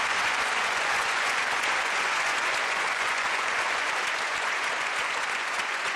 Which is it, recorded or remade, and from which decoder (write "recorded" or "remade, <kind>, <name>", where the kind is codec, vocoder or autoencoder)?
remade, vocoder, Vocos